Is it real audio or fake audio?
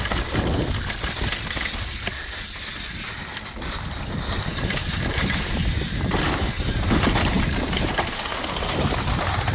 real